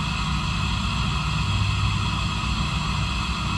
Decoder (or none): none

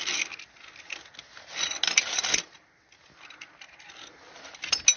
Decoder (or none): none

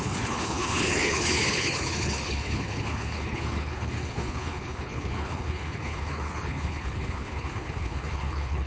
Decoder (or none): codec, HILCodec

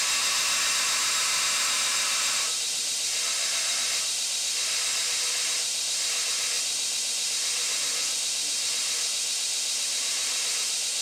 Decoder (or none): none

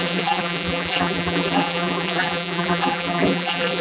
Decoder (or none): vocoder, BigVGAN v2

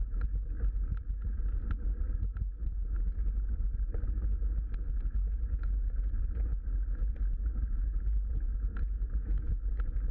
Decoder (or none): none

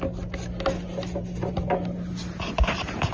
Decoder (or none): none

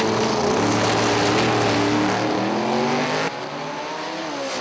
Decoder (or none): none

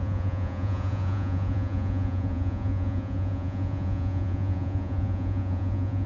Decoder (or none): vocoder, Vocos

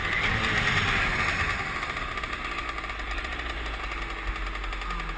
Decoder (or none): none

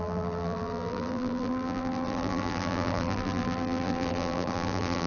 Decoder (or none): vocoder, BigVGAN v2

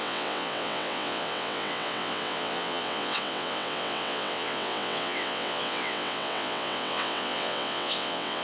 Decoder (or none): vocoder, WaveNeXt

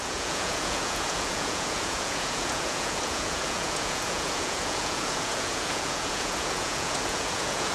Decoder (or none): vocoder, Vocos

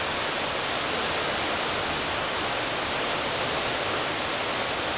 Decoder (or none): none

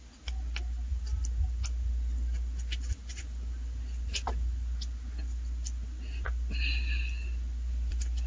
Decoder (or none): none